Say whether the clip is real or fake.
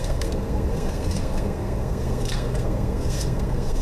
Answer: fake